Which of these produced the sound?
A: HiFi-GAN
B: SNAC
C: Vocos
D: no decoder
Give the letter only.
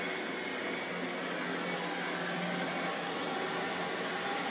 D